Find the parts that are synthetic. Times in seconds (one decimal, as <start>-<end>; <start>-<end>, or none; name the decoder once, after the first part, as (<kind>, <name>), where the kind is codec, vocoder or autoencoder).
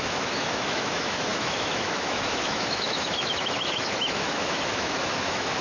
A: 0.0-5.6 (autoencoder, DAC-VAE)